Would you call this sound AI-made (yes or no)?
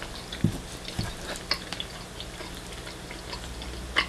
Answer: no